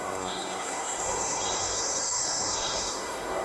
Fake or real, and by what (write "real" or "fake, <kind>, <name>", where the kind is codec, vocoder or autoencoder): fake, codec, SNAC